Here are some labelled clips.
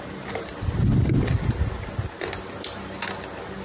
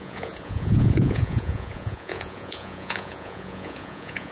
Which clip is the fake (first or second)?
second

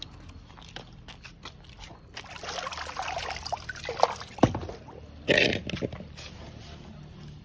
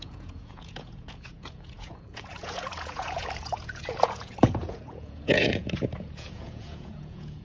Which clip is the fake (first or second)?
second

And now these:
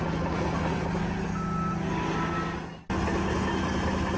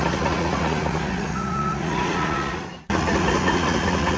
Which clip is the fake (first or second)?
second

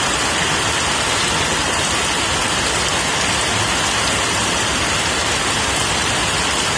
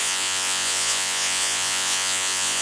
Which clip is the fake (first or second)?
second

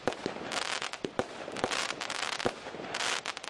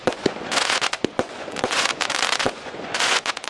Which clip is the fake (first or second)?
second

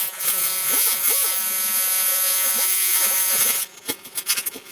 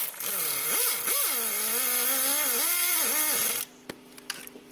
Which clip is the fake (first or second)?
first